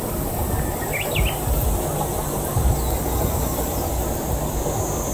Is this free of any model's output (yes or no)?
yes